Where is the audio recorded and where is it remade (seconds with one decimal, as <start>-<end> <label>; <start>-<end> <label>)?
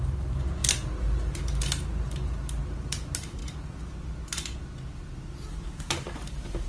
0.0-0.6 remade; 0.6-2.8 recorded; 2.8-3.4 remade; 3.4-5.8 recorded; 5.8-6.7 remade